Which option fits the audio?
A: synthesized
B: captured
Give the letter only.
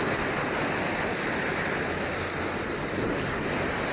B